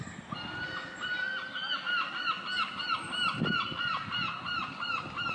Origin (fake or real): real